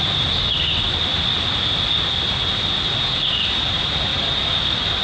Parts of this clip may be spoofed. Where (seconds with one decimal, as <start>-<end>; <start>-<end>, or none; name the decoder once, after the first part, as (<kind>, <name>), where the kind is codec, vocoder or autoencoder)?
none

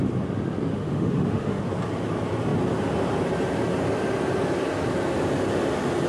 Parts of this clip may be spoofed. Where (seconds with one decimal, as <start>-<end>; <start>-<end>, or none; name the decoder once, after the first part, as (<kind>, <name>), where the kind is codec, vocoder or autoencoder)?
0.7-1.6 (autoencoder, DAC-VAE)